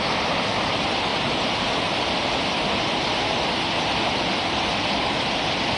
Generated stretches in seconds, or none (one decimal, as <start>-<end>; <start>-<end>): 0.0-1.1; 2.0-3.1; 4.8-5.8